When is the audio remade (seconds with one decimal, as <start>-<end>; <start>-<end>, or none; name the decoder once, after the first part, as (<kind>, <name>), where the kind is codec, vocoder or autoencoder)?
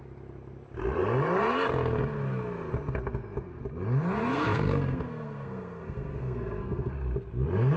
4.2-6.9 (codec, SNAC)